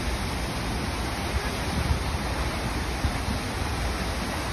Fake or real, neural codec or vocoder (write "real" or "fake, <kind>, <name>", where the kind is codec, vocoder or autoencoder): real